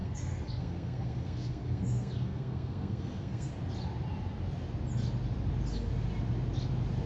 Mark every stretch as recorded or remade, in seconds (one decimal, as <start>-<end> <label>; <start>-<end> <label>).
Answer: 0.0-3.5 remade; 3.5-7.1 recorded